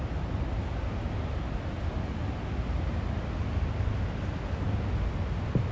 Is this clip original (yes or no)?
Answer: yes